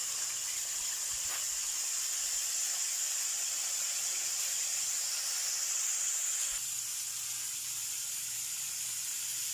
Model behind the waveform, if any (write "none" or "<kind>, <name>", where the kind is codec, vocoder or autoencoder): none